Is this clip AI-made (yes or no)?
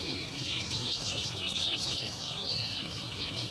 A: yes